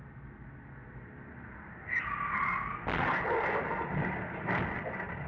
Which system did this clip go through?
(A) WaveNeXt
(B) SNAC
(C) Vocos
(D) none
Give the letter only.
D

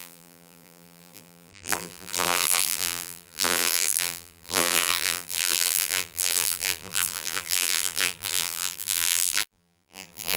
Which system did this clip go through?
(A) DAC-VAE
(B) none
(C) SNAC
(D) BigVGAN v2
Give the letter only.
D